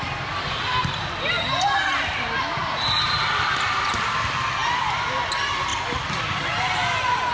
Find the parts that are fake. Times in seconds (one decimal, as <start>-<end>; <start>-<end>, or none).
none